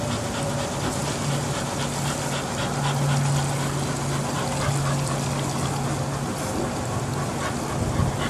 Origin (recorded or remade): recorded